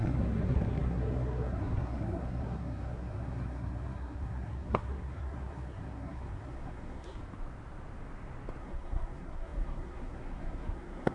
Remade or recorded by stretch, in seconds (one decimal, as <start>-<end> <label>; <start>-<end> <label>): 0.0-7.2 remade; 7.2-8.6 recorded; 8.6-11.1 remade